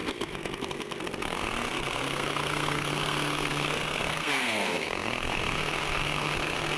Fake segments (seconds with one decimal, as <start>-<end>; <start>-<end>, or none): 0.0-6.8